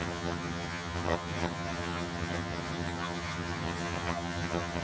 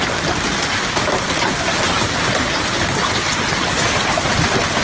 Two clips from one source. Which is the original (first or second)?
second